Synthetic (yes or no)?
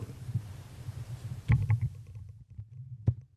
yes